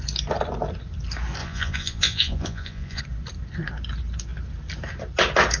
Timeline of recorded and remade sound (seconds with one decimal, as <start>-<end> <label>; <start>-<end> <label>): 0.0-1.4 recorded; 1.4-3.0 remade; 3.0-5.6 recorded